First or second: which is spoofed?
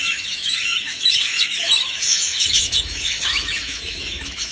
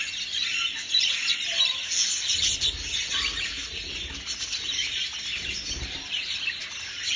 first